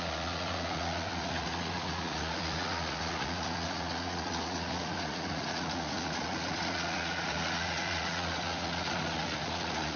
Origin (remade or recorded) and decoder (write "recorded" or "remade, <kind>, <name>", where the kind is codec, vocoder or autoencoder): remade, vocoder, Vocos